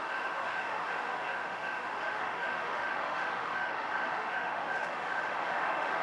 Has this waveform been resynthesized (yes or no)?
yes